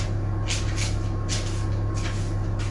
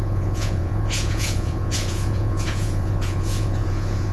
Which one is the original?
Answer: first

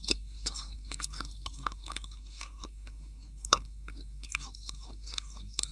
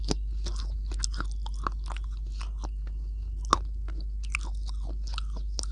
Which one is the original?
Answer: second